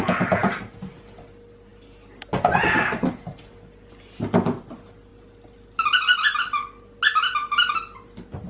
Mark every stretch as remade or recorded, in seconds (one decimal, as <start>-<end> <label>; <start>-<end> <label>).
0.0-8.5 recorded